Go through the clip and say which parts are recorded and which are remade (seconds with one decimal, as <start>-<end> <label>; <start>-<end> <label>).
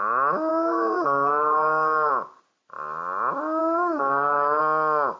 0.0-0.5 recorded; 0.5-2.1 remade; 2.1-3.6 recorded; 3.6-4.6 remade; 4.6-5.2 recorded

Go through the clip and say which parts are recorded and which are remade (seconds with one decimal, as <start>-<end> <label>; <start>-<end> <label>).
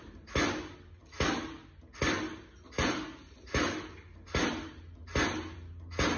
0.0-6.2 recorded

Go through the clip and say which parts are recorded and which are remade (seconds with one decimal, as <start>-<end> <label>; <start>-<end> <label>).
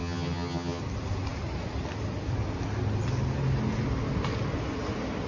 0.0-0.8 remade; 0.8-5.3 recorded